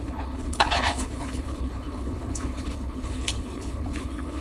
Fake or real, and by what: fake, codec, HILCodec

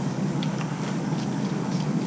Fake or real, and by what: fake, codec, DAC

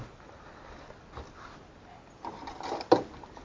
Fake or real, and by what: real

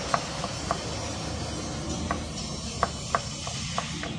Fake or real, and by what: real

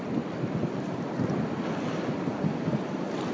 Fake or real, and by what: real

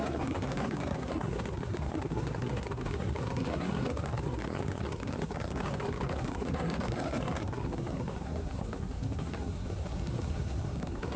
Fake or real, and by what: fake, codec, SNAC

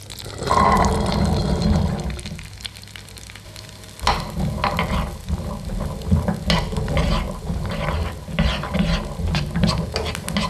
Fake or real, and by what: real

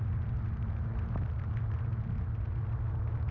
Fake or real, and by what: real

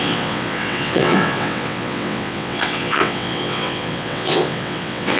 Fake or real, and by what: fake, vocoder, WaveNeXt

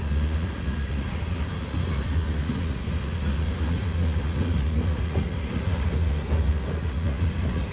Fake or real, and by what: fake, vocoder, Vocos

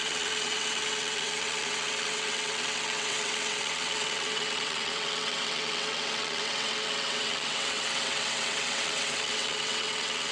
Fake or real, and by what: fake, vocoder, WaveNeXt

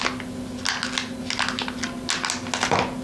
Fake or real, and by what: real